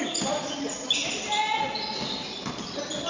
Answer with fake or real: real